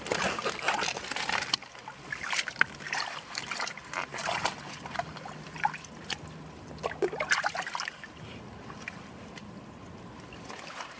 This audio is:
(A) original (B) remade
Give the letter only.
A